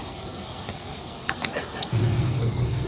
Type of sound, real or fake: fake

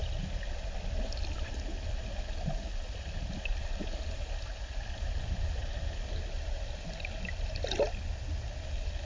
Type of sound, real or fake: real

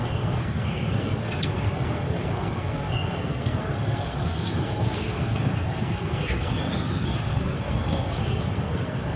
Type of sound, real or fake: fake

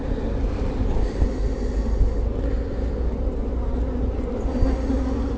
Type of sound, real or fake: real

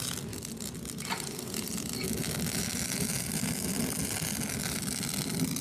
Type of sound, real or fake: real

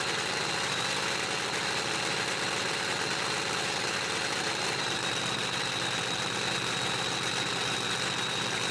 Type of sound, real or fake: real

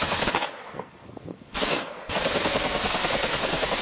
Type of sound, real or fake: fake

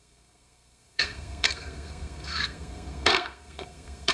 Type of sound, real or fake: fake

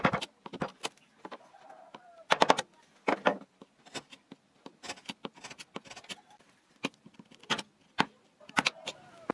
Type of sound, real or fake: real